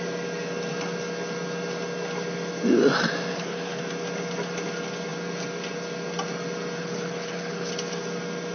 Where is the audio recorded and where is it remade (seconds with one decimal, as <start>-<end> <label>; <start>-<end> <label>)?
0.0-3.3 recorded; 3.3-3.8 remade; 3.8-6.8 recorded; 6.8-7.7 remade; 7.7-8.5 recorded